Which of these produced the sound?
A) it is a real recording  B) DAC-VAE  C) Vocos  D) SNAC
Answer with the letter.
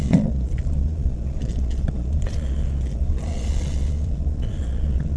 C